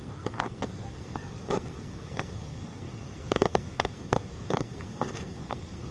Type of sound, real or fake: fake